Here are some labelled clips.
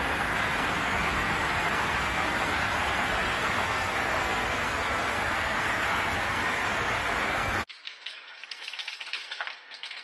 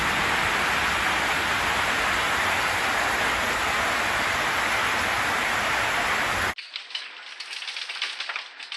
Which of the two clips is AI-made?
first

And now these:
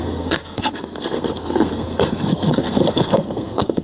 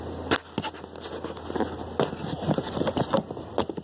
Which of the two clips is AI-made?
first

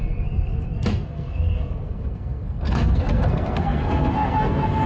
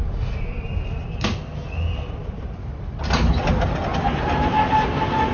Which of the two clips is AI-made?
first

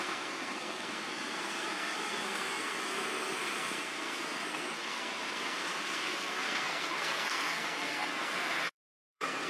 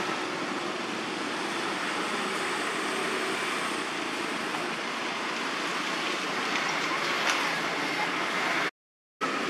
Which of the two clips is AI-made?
first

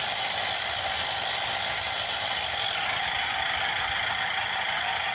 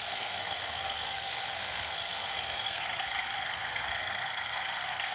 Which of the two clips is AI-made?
second